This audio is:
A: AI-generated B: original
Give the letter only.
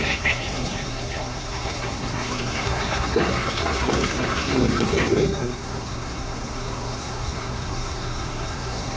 A